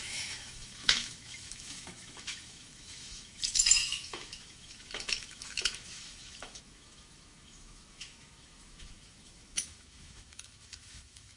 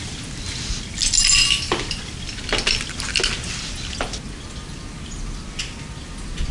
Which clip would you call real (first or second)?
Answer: second